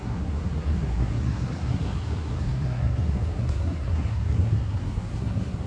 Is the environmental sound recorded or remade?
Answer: remade